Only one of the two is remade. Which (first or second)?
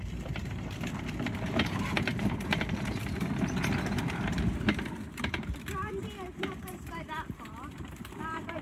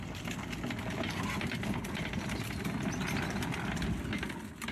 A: first